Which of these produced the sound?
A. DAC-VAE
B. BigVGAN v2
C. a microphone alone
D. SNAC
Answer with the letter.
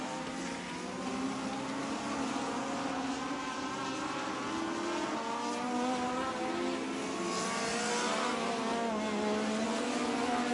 C